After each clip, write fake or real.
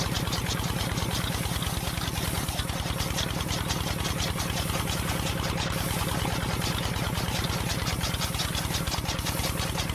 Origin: real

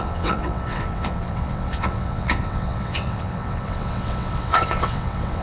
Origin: fake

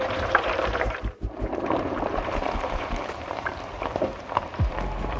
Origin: fake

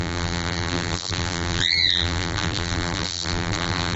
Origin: fake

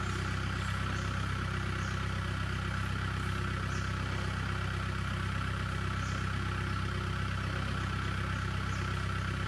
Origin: real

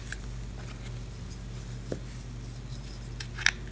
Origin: real